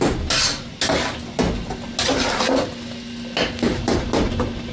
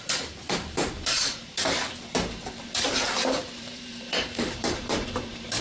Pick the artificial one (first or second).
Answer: second